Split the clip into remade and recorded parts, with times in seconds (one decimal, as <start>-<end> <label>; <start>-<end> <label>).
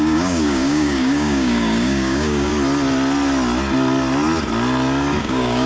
0.0-2.5 remade; 2.5-5.2 recorded; 5.2-5.7 remade